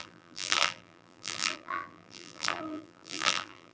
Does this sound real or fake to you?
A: fake